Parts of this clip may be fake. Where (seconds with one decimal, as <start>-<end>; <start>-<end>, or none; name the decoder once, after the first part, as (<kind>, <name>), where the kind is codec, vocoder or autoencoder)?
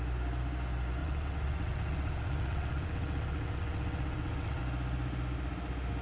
1.0-4.6 (vocoder, WaveNeXt)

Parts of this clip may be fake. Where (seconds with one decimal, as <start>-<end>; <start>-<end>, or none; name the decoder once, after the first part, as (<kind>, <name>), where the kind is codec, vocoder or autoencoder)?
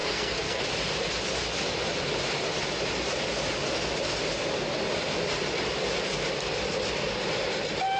0.0-0.6 (codec, SNAC)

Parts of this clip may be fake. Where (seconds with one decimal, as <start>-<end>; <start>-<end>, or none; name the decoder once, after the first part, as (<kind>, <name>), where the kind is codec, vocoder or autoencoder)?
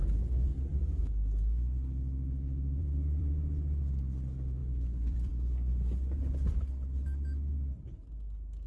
0.5-1.0 (vocoder, BigVGAN v2); 2.8-3.3; 4.6-5.3